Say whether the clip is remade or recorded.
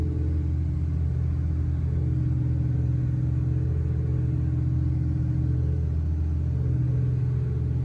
recorded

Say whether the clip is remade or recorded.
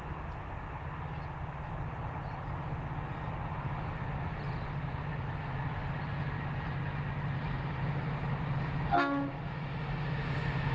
recorded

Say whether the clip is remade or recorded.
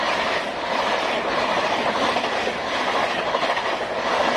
recorded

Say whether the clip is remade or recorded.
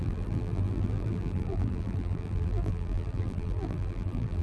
remade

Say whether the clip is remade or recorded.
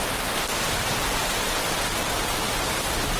recorded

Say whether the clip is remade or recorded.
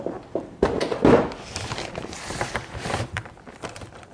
remade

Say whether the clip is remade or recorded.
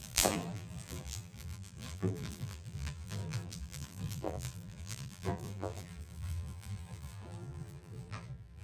remade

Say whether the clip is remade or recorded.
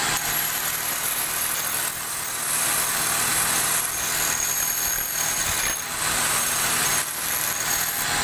recorded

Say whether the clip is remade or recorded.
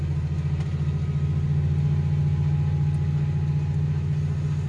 recorded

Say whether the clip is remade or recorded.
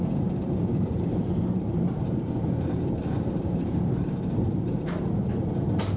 remade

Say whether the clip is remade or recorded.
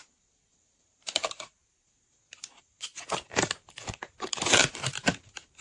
remade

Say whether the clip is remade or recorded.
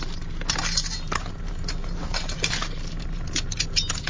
remade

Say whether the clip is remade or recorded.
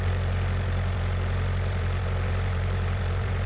remade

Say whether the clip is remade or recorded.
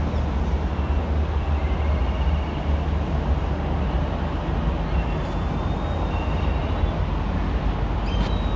recorded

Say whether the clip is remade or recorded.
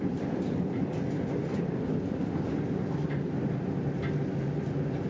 remade